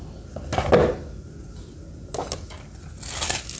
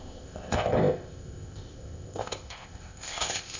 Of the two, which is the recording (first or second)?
first